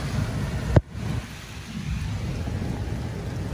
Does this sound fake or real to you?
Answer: real